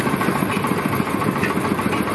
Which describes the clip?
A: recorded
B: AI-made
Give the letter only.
A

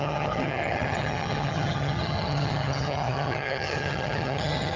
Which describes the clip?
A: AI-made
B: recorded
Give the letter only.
A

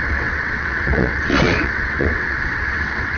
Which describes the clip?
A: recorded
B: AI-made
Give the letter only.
B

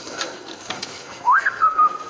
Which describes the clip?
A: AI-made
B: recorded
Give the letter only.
A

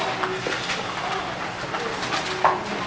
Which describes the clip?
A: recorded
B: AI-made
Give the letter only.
A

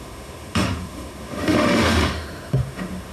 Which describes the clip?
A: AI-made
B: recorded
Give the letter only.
A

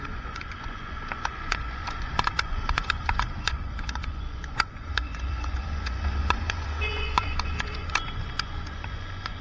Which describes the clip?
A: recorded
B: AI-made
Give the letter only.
B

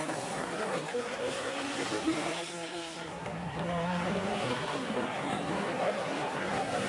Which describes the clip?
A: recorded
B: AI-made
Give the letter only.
B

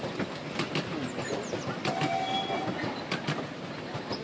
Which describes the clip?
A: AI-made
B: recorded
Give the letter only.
B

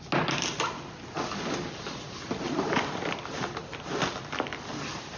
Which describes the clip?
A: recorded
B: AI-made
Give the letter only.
A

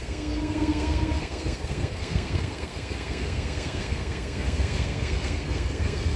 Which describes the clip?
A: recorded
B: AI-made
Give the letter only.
B